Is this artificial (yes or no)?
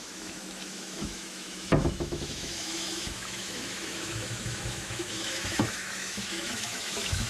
yes